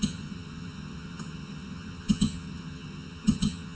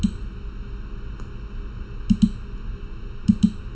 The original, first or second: second